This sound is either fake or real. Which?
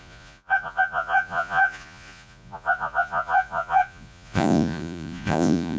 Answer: fake